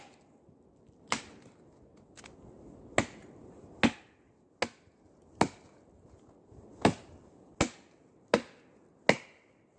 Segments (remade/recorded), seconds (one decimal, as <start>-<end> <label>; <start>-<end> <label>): 0.0-9.8 recorded